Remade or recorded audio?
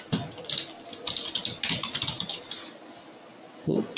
recorded